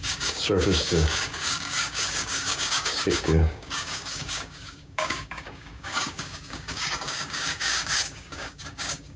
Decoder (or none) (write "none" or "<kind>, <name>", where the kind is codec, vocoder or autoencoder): codec, DAC